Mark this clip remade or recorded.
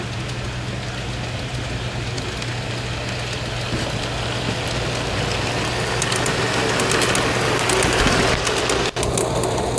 recorded